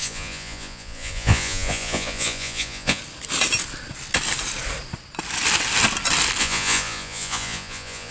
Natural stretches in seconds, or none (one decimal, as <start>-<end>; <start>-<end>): 3.0-6.4